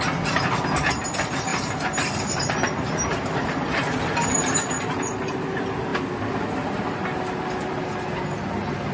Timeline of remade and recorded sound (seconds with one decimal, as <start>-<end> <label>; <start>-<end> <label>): 0.0-1.5 recorded; 1.5-3.5 remade; 3.5-8.9 recorded